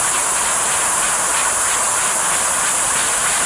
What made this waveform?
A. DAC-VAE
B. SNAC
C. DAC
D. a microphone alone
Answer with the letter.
D